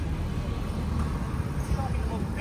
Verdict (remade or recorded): recorded